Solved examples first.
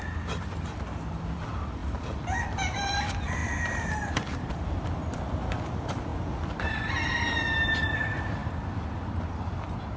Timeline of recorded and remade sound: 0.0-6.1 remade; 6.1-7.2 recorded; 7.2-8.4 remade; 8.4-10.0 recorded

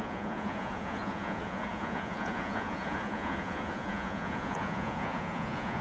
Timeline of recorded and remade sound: 0.0-5.8 remade

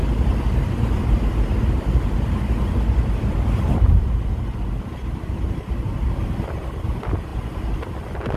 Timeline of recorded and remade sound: 0.0-3.3 recorded; 3.3-7.3 remade; 7.3-8.4 recorded

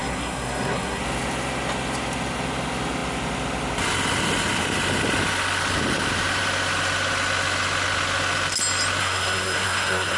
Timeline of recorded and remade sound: 0.0-1.0 remade; 1.0-9.0 recorded; 9.0-10.2 remade

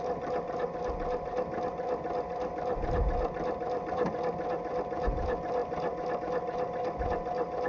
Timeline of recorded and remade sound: 0.0-7.7 recorded

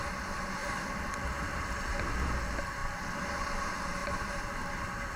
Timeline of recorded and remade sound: 0.0-0.6 recorded; 0.6-2.0 remade; 2.0-5.2 recorded

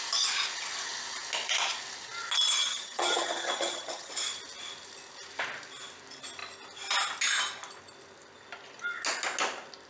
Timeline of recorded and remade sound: 0.0-2.6 recorded; 2.6-4.1 remade; 4.1-9.9 recorded